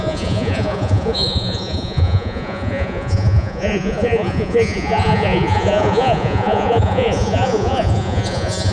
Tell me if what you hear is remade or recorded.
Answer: remade